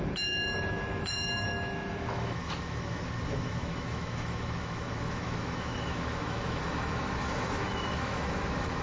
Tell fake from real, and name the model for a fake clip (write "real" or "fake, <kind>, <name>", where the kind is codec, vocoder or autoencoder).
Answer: fake, autoencoder, DAC-VAE